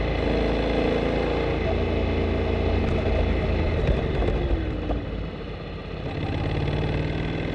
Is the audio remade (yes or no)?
no